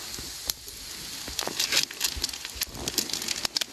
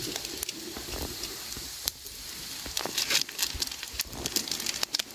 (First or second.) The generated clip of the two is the second